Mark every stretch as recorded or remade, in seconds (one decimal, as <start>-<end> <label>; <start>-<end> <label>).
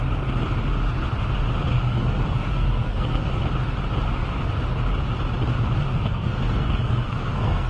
0.0-1.7 recorded; 1.7-3.3 remade; 3.3-5.9 recorded; 5.9-7.7 remade